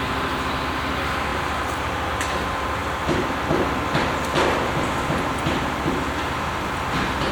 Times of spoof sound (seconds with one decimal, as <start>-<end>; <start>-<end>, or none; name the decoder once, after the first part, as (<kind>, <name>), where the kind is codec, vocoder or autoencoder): 1.3-2.1 (vocoder, BigVGAN v2)

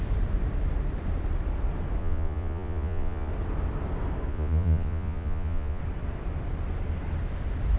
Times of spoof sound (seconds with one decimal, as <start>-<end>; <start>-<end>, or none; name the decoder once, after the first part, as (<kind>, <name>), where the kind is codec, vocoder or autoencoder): 2.0-3.3 (vocoder, Vocos); 4.3-5.8

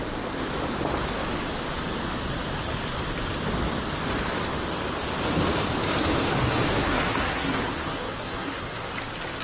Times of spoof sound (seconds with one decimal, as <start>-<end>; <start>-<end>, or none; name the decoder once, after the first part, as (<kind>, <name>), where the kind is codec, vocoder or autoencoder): 6.7-8.9 (codec, SNAC)

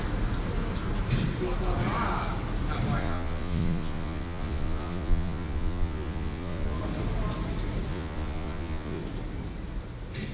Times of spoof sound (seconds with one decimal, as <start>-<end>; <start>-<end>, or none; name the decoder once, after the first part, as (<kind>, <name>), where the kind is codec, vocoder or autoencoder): 3.0-6.8 (vocoder, Vocos); 7.9-9.0

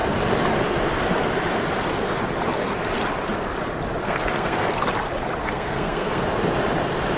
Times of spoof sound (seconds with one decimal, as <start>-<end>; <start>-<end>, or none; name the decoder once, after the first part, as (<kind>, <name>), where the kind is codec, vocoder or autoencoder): 4.0-4.7 (codec, SNAC); 5.4-6.2

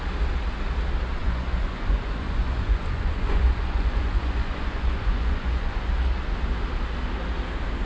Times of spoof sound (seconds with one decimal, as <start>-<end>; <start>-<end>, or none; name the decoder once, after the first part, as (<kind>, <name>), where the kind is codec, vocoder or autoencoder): 1.2-5.9 (vocoder, Vocos)